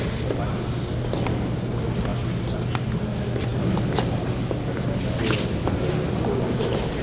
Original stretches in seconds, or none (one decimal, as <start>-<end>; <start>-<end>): 0.0-7.0